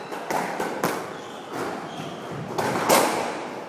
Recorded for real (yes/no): yes